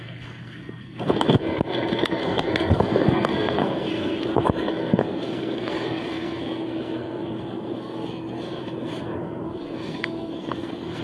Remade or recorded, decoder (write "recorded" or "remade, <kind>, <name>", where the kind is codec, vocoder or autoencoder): remade, codec, SNAC